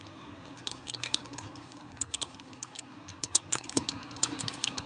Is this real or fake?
fake